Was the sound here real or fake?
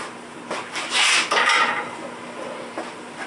real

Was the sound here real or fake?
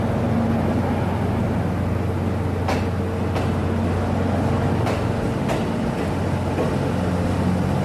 real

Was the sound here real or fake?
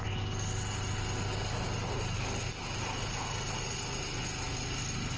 real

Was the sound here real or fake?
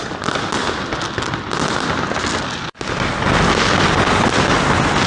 real